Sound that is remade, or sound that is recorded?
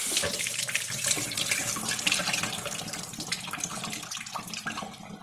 remade